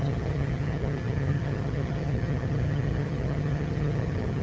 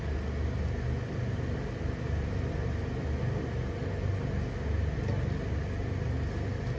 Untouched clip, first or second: second